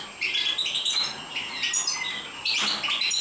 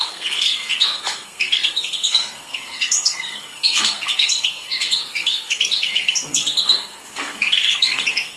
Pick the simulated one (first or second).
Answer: second